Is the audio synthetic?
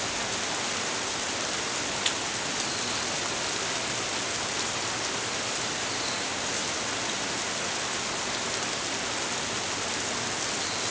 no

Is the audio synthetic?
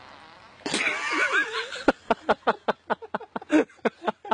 no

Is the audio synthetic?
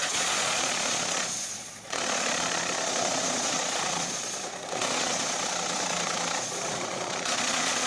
yes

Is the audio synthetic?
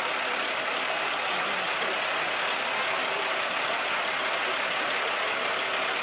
no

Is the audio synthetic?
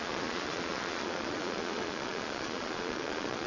yes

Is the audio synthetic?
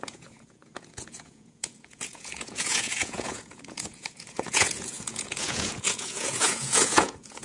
yes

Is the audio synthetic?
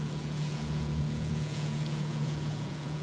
yes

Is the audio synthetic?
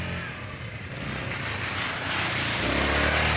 no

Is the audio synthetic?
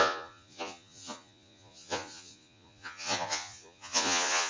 yes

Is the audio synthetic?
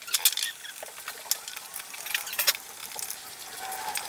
no